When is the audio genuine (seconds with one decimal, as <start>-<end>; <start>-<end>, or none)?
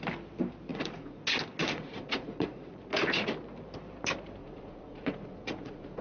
0.0-0.7; 1.2-1.6; 2.7-4.4